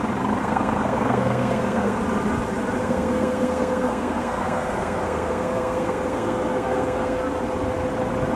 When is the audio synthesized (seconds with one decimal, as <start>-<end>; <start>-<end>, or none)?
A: 0.4-2.0; 2.8-7.2